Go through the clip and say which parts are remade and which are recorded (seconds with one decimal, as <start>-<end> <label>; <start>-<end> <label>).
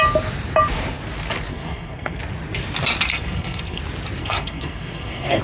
0.0-1.5 recorded; 1.5-2.2 remade; 2.2-3.1 recorded; 3.1-3.8 remade; 3.8-4.2 recorded; 4.2-5.4 remade